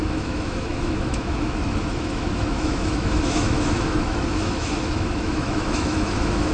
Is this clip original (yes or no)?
no